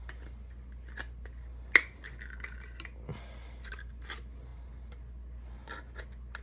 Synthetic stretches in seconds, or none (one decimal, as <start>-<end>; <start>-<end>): none